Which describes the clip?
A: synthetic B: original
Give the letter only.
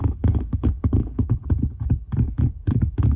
A